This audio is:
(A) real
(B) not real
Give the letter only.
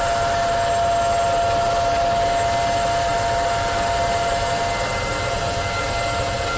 A